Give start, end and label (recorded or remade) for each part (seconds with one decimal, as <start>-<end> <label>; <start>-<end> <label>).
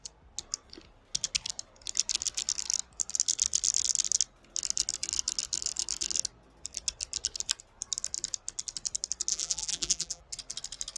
0.0-9.3 recorded; 9.3-10.2 remade; 10.2-11.0 recorded